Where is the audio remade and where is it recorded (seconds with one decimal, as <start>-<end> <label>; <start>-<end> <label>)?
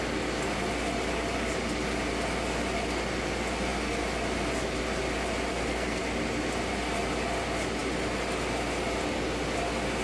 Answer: 0.0-5.5 recorded; 5.5-6.0 remade; 6.0-10.0 recorded